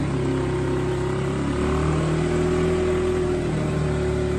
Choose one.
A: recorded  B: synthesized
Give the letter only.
A